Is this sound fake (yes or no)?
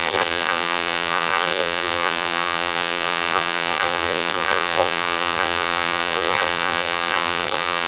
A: yes